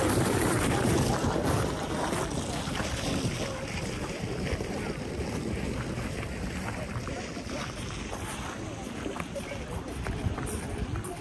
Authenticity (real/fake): real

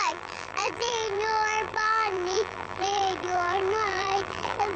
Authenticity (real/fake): fake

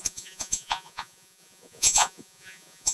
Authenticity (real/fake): fake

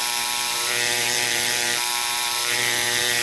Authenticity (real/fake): fake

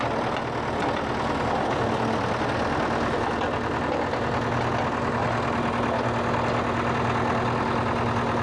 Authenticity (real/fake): real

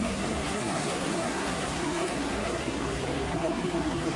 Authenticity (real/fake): fake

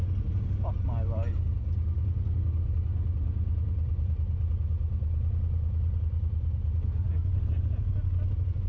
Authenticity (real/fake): real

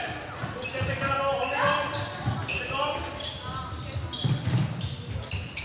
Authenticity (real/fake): real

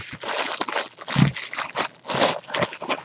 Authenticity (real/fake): real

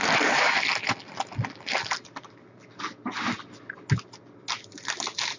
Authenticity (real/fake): real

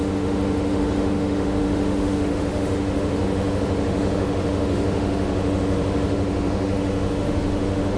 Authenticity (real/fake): fake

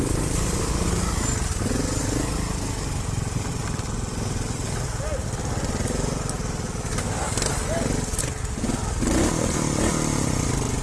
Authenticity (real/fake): real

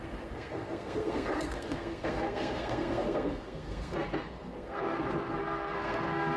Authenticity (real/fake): fake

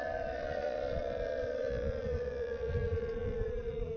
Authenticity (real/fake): fake